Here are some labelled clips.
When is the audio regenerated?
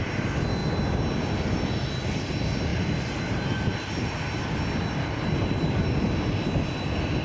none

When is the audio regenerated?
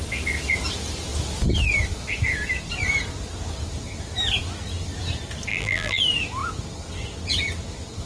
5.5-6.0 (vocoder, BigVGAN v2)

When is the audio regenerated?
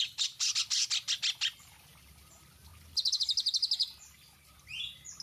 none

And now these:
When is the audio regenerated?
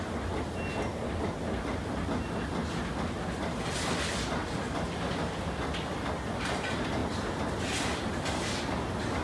none